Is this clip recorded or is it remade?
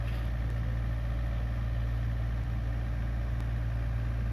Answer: recorded